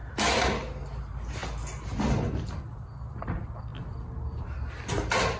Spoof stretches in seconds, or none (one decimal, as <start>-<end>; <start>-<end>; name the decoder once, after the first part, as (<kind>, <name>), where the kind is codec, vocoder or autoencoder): none